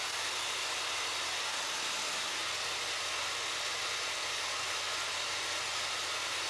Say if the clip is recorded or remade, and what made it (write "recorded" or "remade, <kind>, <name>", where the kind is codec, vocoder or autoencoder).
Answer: recorded